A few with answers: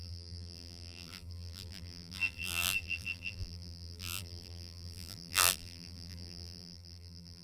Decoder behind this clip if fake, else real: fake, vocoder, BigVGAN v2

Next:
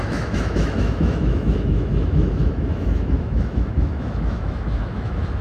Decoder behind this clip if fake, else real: fake, autoencoder, DAC-VAE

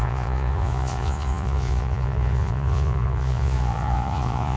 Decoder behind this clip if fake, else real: fake, vocoder, Vocos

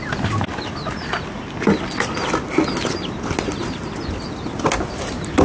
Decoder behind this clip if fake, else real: real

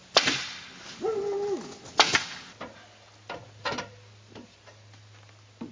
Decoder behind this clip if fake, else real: real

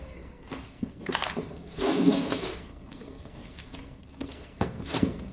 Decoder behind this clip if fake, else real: fake, codec, SNAC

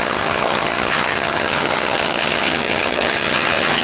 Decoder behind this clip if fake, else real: fake, vocoder, HiFi-GAN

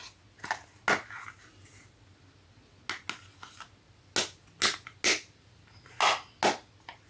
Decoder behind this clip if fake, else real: real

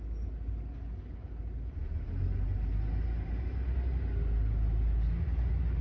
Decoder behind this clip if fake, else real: real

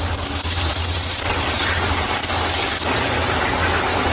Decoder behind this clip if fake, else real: real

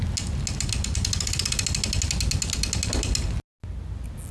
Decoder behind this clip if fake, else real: real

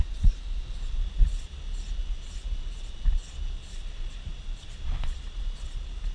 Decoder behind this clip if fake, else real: fake, vocoder, Vocos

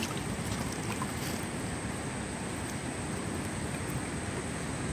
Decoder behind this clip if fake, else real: real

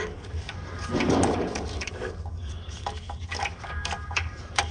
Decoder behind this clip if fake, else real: fake, codec, DAC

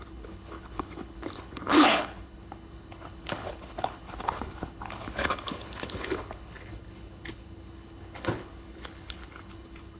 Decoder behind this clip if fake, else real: fake, codec, HILCodec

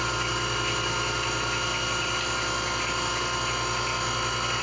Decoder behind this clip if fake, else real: real